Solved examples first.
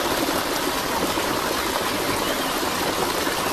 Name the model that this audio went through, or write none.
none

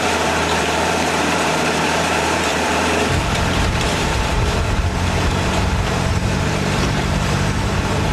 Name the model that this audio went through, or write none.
vocoder, BigVGAN v2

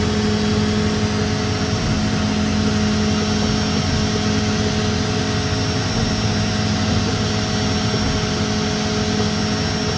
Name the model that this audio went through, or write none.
none